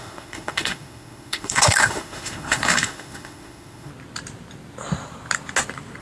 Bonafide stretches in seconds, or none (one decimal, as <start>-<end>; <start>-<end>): 3.9-6.0